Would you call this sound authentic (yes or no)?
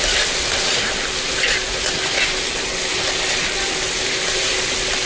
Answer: yes